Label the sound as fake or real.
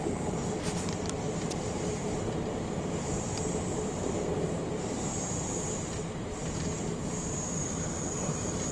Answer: fake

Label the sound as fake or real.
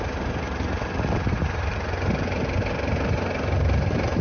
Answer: real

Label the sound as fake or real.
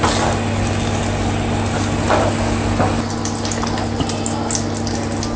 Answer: real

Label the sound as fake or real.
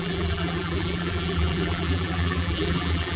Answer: fake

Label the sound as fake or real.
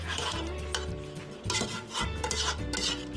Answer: real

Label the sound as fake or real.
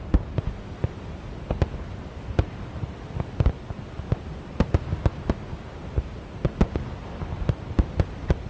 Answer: real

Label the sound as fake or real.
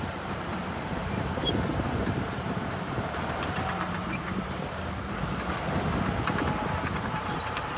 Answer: fake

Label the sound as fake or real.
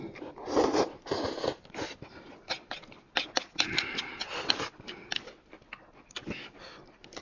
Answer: real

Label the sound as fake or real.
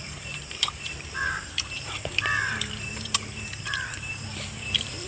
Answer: fake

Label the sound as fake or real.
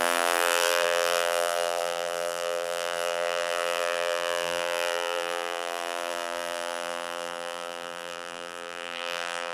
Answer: fake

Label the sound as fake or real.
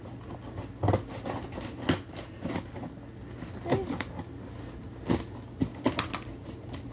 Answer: real